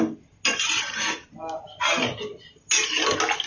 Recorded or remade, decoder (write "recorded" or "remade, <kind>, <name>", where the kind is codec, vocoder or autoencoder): recorded